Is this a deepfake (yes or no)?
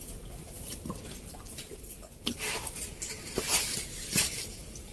yes